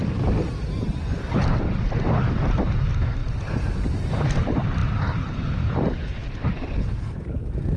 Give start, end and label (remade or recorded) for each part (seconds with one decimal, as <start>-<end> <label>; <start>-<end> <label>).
0.0-7.8 recorded